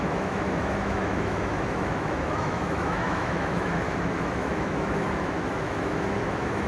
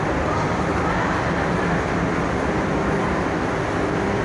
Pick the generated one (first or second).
first